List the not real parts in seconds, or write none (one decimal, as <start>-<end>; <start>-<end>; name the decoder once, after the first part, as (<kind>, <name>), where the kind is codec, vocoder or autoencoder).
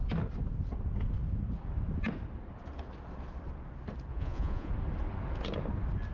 4.1-4.7 (vocoder, Vocos)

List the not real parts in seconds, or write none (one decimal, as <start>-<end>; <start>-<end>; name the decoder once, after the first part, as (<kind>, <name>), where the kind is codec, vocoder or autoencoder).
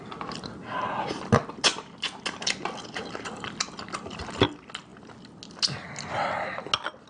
none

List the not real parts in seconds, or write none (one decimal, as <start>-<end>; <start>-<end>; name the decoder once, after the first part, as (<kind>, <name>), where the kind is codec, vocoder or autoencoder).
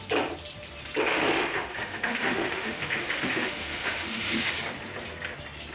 1.1-4.5 (autoencoder, DAC-VAE)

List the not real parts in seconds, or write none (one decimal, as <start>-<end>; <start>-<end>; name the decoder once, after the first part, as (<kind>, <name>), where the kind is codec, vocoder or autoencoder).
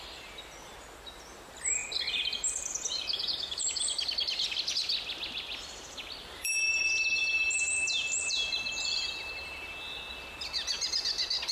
1.8-3.7 (vocoder, BigVGAN v2); 6.2-6.8; 7.2-9.3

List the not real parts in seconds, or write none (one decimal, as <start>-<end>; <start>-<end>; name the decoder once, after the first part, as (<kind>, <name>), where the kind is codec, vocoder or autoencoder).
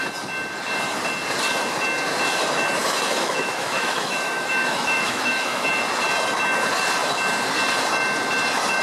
2.8-5.7 (autoencoder, DAC-VAE)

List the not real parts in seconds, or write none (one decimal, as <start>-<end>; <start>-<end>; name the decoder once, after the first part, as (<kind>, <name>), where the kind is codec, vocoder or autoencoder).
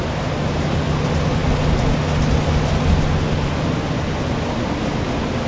none